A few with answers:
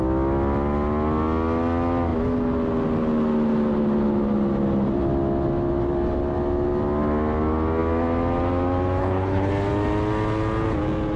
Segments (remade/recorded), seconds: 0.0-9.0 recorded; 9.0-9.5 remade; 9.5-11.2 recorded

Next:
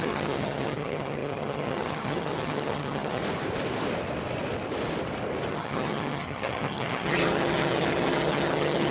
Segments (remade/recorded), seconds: 0.0-3.2 remade; 3.2-5.5 recorded; 5.5-8.9 remade

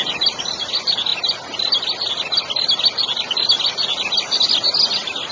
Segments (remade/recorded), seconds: 0.0-5.3 recorded

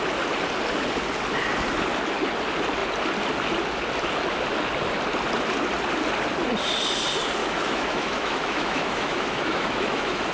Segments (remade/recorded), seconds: 0.0-7.4 recorded; 7.4-10.3 remade

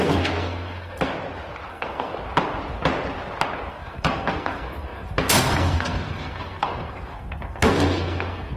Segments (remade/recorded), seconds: 0.0-1.1 remade; 1.1-1.7 recorded; 1.7-2.1 remade; 2.1-3.7 recorded; 3.7-8.6 remade